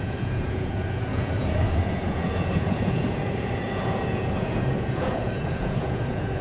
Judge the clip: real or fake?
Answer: fake